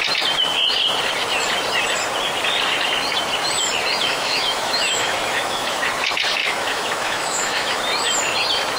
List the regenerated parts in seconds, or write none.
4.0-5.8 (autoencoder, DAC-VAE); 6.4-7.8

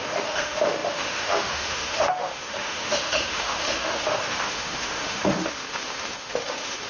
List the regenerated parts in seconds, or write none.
0.0-6.9 (autoencoder, DAC-VAE)

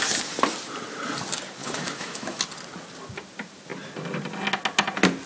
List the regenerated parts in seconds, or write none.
1.6-2.4 (autoencoder, DAC-VAE)

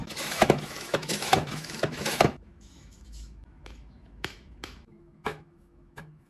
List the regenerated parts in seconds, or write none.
0.0-6.3 (autoencoder, DAC-VAE)